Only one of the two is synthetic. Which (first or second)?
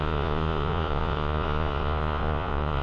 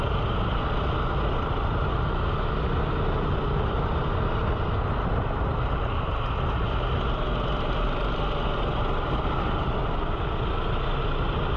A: first